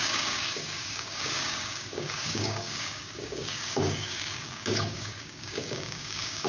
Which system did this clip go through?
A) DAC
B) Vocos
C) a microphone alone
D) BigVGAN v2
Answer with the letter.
A